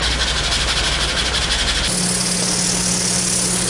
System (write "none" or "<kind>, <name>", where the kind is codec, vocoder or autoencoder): none